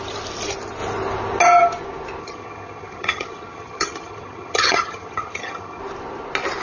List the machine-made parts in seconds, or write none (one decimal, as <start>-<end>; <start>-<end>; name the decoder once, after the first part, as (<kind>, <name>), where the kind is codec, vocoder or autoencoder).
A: 2.2-5.8 (vocoder, HiFi-GAN)